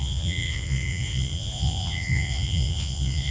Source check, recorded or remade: remade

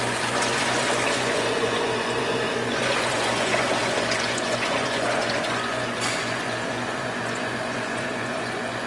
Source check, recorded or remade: remade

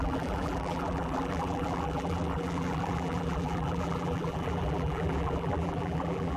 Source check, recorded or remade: remade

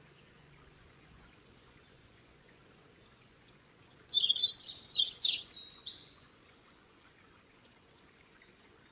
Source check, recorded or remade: remade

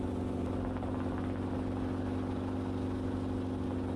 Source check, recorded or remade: recorded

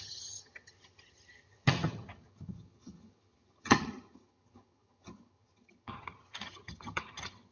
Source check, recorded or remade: remade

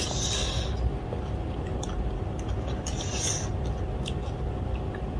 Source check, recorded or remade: recorded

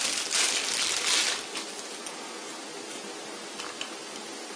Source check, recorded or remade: recorded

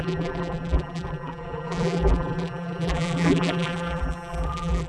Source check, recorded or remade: remade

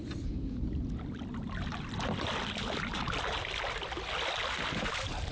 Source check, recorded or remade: recorded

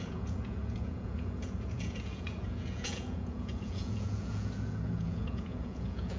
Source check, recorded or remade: remade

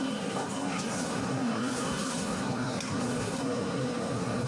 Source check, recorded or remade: remade